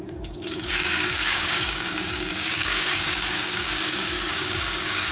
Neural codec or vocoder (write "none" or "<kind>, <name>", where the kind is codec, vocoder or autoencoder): codec, DAC